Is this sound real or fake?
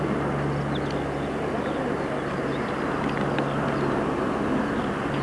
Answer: real